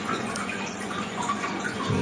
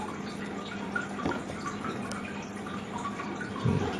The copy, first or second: first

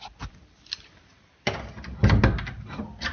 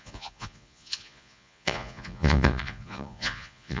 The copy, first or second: second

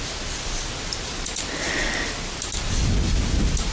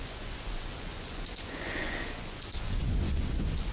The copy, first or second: second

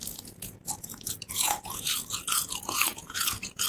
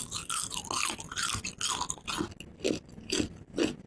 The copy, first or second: first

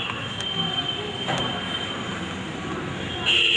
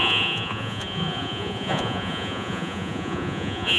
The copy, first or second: second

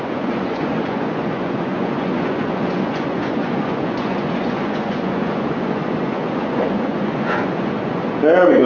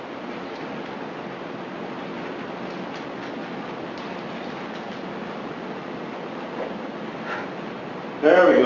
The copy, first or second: first